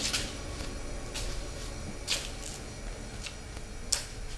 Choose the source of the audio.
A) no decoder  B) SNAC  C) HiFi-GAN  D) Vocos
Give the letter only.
A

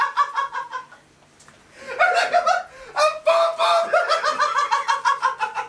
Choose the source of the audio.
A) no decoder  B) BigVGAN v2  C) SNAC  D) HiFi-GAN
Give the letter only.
A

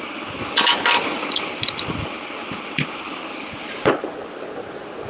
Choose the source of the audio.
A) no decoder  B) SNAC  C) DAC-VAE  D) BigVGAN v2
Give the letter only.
A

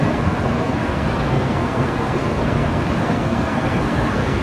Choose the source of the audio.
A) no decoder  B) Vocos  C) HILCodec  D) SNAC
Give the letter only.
D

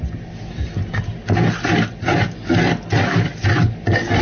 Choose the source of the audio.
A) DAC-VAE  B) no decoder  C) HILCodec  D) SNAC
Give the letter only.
B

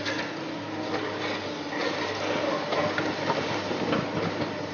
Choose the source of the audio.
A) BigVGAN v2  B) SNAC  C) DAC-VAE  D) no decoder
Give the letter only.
D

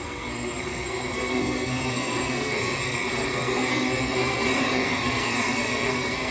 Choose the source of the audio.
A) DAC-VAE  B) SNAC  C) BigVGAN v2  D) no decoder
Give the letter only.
B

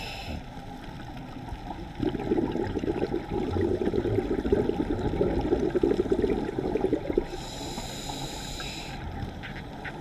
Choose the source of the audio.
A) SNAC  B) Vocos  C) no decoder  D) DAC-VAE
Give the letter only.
C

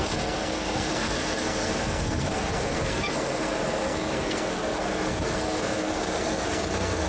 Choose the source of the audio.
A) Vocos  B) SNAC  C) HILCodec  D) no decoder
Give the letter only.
B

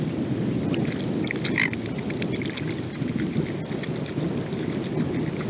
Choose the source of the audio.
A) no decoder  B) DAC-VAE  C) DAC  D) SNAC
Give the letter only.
A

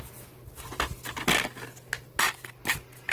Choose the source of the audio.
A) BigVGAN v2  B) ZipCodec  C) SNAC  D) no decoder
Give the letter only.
D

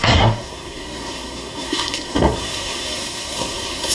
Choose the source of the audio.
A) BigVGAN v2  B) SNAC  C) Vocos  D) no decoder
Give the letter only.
B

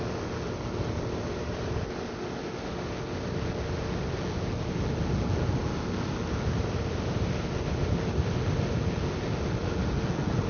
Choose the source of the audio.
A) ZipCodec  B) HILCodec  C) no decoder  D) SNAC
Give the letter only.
C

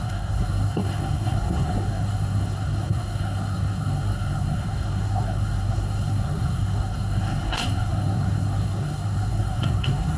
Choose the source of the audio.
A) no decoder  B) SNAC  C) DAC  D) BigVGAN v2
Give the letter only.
B